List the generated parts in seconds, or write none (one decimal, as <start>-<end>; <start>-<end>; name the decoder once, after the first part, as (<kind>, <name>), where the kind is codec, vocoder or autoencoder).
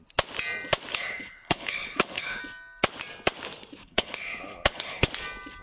0.9-2.4 (codec, HILCodec); 3.8-5.1